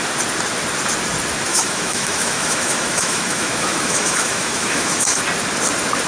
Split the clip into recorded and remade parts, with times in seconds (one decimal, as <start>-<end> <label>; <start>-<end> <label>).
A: 0.0-1.5 recorded; 1.5-5.2 remade; 5.2-6.1 recorded